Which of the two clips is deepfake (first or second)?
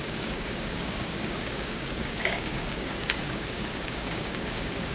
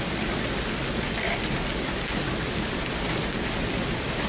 first